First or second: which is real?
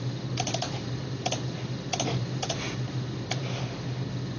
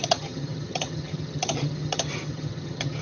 first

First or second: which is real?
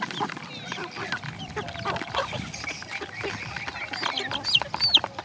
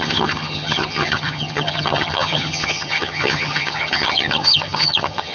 first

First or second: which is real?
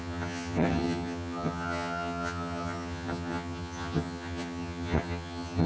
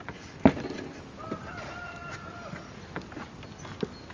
second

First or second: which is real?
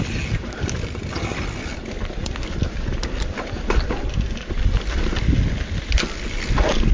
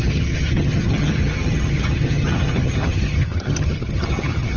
first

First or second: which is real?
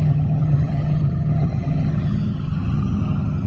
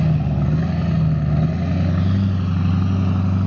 second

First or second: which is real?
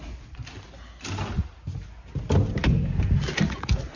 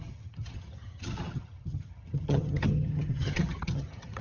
first